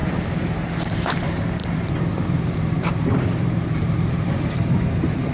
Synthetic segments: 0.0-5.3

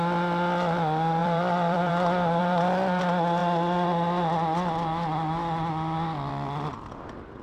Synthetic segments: 1.2-1.9; 2.4-3.0